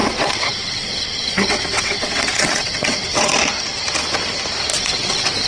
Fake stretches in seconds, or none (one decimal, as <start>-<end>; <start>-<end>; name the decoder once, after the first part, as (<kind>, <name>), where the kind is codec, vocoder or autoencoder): 0.0-3.3 (vocoder, WaveNeXt); 4.7-5.5